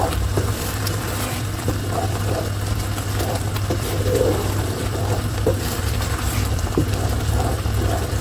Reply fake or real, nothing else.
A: fake